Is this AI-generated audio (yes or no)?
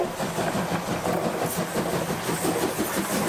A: no